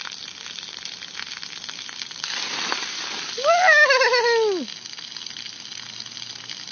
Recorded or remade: recorded